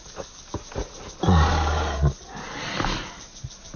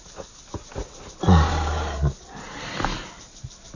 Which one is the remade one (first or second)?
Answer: second